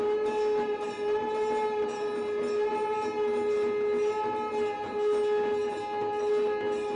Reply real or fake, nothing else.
real